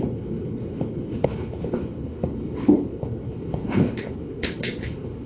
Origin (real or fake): fake